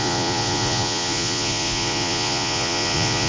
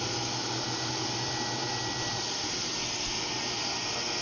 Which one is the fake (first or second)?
first